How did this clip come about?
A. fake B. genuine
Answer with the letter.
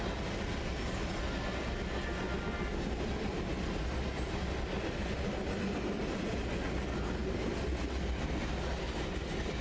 B